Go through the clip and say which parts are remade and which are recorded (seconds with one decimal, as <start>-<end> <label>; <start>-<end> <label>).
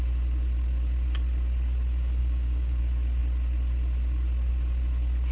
0.0-2.2 recorded; 2.2-2.8 remade; 2.8-5.3 recorded